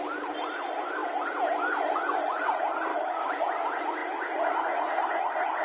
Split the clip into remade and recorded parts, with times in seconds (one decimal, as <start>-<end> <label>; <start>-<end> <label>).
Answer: 0.0-2.9 recorded; 2.9-3.4 remade; 3.4-5.6 recorded